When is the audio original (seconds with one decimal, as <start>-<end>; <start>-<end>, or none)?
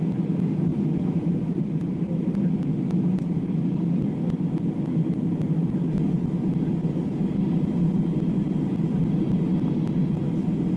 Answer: 0.0-0.7; 1.9-10.8